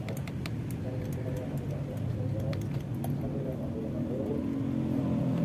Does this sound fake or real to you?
real